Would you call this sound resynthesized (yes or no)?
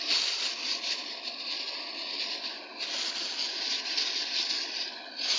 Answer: no